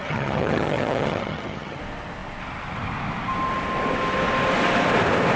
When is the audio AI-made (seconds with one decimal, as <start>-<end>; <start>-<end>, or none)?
0.0-1.8